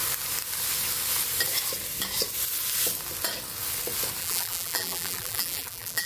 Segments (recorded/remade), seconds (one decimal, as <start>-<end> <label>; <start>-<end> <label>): 0.0-4.2 recorded; 4.2-6.1 remade